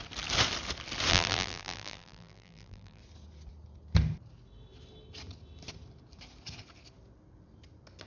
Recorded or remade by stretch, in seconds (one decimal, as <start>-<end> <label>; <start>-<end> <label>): 0.0-1.1 recorded; 1.1-3.0 remade; 3.0-8.1 recorded